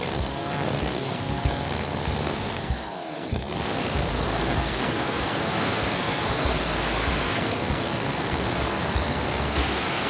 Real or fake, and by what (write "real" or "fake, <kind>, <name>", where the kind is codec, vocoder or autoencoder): fake, codec, SNAC